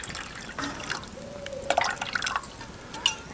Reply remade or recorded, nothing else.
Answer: recorded